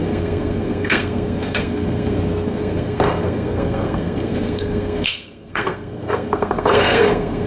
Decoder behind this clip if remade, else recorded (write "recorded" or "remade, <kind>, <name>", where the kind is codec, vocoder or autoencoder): remade, codec, SNAC